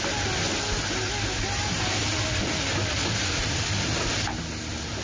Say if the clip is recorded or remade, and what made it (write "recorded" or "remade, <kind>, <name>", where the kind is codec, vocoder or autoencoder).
recorded